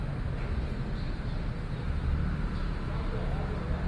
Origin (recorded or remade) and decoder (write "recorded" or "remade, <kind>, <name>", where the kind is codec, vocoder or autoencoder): recorded